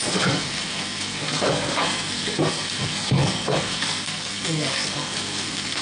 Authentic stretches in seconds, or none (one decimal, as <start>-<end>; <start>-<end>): none